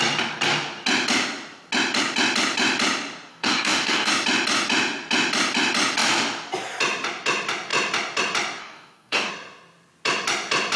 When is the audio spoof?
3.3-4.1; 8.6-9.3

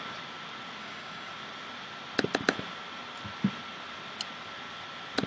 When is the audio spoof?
0.8-1.3

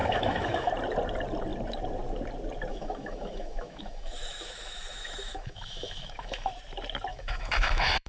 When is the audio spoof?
0.0-0.7; 2.7-6.5; 7.1-8.1

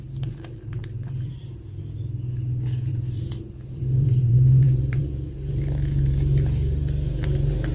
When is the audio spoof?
0.8-1.8; 2.9-5.0